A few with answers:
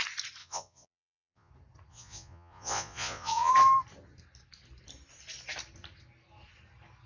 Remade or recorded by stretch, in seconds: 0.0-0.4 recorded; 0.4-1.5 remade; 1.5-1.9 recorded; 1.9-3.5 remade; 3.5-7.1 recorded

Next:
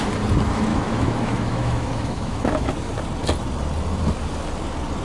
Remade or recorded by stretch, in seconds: 0.0-0.7 recorded; 0.7-2.7 remade; 2.7-5.0 recorded

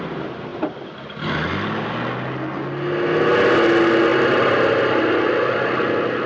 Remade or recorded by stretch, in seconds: 0.0-6.3 recorded

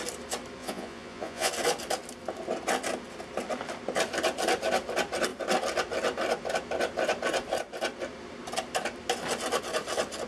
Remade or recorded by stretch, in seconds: 0.0-0.6 recorded; 0.6-1.5 remade; 1.5-10.3 recorded

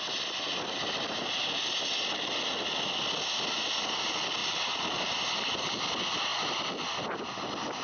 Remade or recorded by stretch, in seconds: 0.0-4.4 recorded; 4.4-5.6 remade; 5.6-7.8 recorded

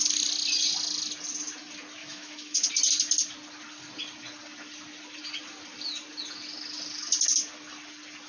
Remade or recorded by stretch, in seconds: 0.0-2.0 recorded; 2.0-2.7 remade; 2.7-8.3 recorded

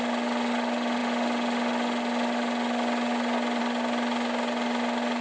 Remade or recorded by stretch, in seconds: 0.0-5.2 recorded